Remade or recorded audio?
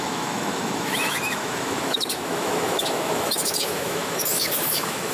remade